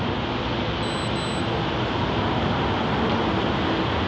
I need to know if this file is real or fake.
real